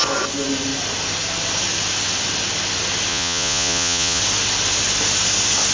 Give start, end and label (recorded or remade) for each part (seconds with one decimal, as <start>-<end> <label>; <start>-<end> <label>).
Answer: 0.0-3.1 recorded; 3.1-4.2 remade; 4.2-5.7 recorded